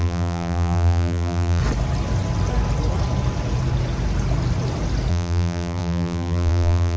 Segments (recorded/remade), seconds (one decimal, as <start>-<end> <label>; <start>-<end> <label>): 0.0-1.6 remade; 1.6-5.1 recorded; 5.1-7.0 remade